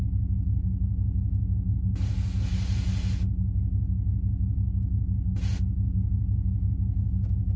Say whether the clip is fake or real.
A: real